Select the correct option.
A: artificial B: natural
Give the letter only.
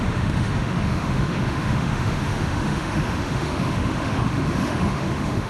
A